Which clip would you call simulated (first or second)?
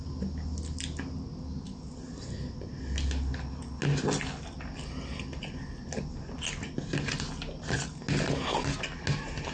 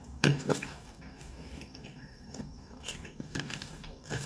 second